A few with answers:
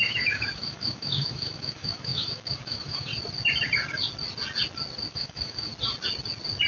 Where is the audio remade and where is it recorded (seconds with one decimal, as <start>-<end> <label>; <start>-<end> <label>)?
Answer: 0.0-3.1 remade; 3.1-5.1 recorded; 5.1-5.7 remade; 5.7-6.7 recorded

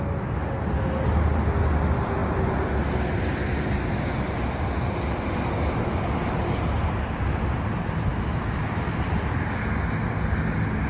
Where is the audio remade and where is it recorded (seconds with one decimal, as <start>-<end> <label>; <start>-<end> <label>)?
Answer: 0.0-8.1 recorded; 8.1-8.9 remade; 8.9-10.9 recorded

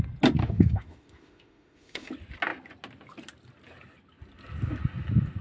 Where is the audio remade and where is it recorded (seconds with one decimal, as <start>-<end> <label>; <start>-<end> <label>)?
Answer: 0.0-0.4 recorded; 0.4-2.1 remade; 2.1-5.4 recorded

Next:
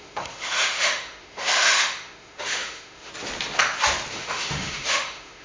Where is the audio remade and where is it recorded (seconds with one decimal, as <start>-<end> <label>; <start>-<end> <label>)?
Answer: 0.0-3.1 remade; 3.1-4.1 recorded; 4.1-5.4 remade

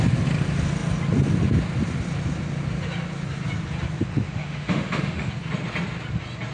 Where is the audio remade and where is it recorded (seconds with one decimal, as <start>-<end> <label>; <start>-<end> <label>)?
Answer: 0.0-4.1 recorded; 4.1-5.3 remade; 5.3-6.5 recorded

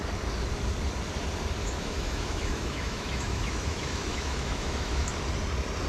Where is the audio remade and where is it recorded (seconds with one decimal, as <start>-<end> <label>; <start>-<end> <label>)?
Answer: 0.0-1.6 recorded; 1.6-5.1 remade; 5.1-5.9 recorded